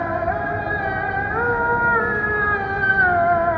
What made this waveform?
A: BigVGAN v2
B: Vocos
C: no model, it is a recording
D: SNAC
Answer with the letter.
C